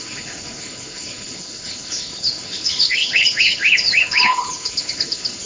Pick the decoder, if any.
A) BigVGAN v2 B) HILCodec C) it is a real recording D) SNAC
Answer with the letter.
B